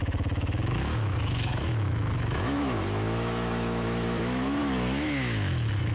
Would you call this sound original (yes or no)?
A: no